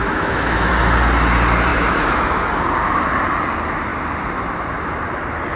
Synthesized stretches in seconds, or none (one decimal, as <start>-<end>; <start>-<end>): 0.0-0.7; 1.7-2.4